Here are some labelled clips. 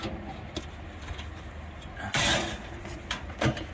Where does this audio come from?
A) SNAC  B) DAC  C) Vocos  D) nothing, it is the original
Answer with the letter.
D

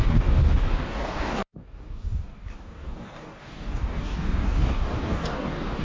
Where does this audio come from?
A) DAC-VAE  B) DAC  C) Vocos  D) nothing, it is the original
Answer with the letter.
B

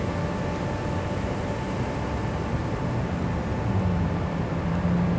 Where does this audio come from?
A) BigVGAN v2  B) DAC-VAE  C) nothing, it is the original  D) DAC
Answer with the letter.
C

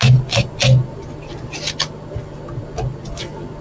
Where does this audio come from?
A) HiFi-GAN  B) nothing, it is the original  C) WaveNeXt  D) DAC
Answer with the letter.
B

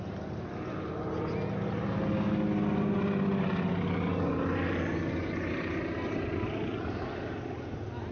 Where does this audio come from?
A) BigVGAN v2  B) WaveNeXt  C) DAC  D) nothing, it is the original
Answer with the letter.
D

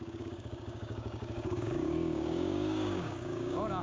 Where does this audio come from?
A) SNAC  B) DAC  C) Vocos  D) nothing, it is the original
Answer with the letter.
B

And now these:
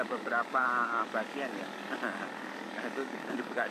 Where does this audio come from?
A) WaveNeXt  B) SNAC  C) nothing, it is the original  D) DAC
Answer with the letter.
D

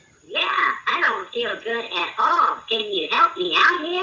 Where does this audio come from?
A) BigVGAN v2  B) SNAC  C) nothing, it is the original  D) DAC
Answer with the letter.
C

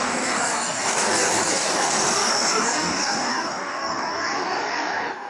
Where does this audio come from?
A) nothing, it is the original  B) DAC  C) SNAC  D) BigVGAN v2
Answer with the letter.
B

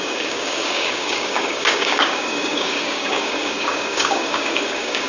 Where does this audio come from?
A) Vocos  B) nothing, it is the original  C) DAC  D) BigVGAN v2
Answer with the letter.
C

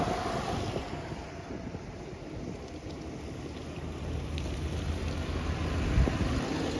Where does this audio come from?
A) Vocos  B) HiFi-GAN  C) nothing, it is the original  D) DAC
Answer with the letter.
C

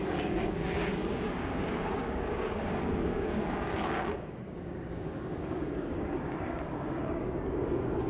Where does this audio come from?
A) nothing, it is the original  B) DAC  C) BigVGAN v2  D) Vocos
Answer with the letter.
B